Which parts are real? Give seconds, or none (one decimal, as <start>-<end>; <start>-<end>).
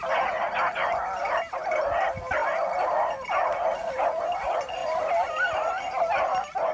0.0-6.7